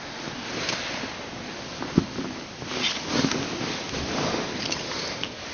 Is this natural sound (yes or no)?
yes